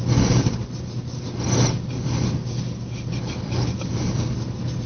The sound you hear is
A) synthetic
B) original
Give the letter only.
B